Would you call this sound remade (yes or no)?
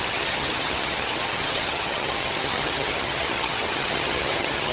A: yes